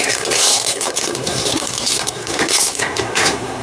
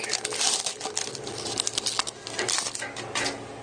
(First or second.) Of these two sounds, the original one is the second